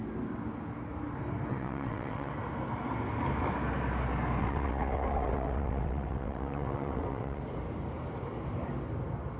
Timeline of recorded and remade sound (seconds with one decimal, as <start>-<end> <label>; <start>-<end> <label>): 0.0-1.5 recorded; 1.5-2.3 remade; 2.3-4.4 recorded; 4.4-7.4 remade; 7.4-9.4 recorded